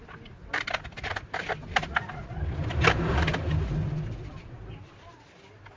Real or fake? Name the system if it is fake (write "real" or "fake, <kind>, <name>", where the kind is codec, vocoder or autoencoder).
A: real